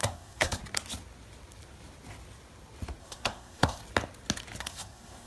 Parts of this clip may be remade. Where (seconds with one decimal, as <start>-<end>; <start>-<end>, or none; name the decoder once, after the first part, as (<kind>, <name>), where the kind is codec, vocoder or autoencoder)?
0.0-0.6 (codec, SNAC); 3.0-3.8; 4.6-5.3